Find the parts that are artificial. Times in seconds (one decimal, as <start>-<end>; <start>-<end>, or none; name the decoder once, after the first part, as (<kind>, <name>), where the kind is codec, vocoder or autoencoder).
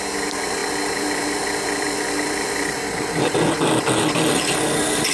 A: none